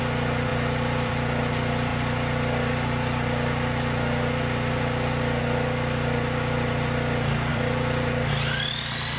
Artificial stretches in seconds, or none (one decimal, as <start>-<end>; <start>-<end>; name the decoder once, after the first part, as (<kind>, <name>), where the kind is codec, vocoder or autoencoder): 0.5-1.1 (vocoder, BigVGAN v2); 7.5-8.3